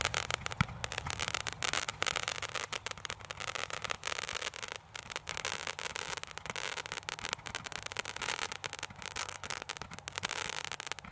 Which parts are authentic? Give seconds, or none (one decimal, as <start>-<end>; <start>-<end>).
0.0-9.2; 9.7-11.1